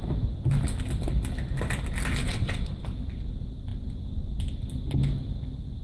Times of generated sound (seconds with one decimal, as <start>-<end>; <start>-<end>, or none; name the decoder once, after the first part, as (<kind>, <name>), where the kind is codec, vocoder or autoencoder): 2.2-2.8 (vocoder, WaveNeXt)